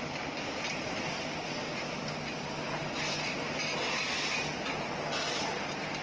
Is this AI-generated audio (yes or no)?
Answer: no